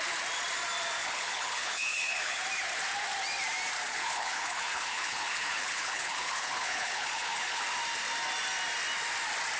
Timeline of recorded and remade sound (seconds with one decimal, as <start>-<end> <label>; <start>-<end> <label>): 0.0-1.0 recorded; 1.0-2.4 remade; 2.4-3.9 recorded; 3.9-7.6 remade; 7.6-9.6 recorded